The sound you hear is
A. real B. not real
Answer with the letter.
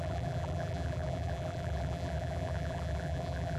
B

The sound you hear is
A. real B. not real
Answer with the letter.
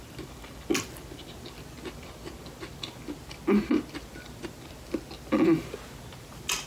A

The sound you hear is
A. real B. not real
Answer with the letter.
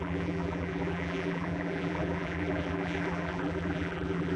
B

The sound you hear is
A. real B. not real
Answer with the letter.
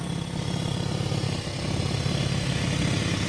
A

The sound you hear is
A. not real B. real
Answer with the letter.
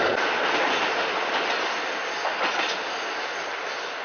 B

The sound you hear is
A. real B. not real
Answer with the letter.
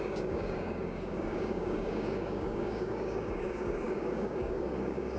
B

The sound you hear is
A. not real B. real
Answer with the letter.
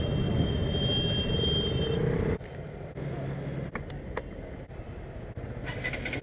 B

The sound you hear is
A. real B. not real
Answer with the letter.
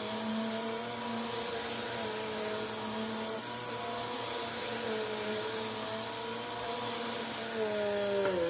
A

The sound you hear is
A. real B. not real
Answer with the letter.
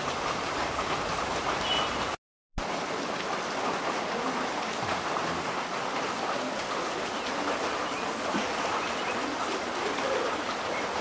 A